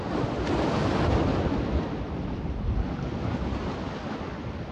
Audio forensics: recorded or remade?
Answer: recorded